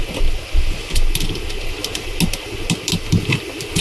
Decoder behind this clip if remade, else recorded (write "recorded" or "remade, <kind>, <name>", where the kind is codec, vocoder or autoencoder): recorded